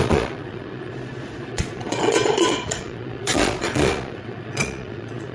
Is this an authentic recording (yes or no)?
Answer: no